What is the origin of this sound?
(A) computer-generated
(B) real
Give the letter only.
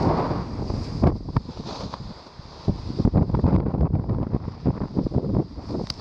B